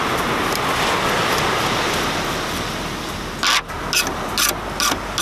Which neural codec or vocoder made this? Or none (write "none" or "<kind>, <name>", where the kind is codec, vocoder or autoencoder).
none